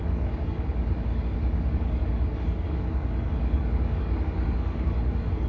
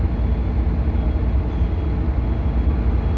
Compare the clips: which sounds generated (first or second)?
first